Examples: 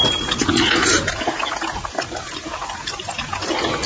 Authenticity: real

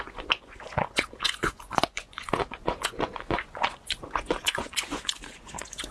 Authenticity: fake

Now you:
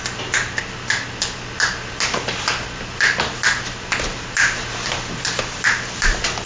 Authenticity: real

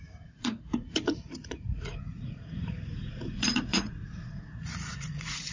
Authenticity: fake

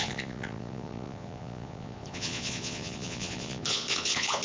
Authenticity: fake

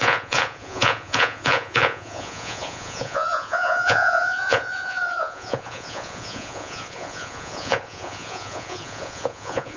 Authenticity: fake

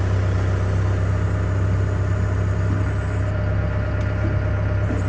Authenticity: real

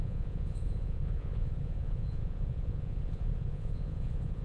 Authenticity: fake